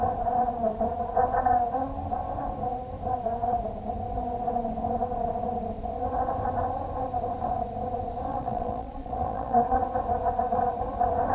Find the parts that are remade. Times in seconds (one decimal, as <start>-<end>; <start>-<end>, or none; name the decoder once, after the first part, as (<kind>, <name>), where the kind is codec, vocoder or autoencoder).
8.3-9.8 (vocoder, Vocos)